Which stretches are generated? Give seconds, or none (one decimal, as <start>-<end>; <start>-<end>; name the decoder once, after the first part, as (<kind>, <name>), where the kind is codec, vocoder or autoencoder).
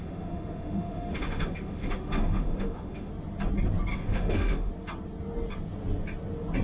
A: 0.0-3.1 (autoencoder, DAC-VAE); 3.9-4.7